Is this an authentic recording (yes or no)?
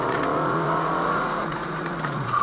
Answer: no